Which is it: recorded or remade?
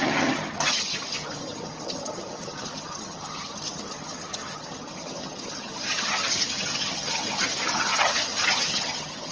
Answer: remade